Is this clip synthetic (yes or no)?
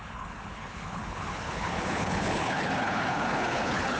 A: yes